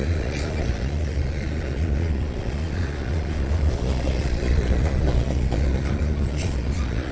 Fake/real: fake